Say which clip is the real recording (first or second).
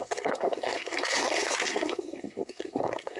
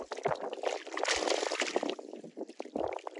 second